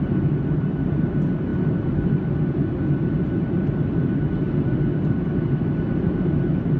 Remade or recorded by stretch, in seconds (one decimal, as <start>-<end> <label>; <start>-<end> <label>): 0.0-6.8 remade